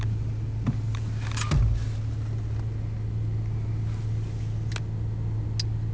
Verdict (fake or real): real